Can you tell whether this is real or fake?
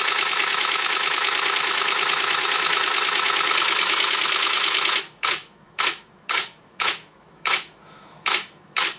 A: fake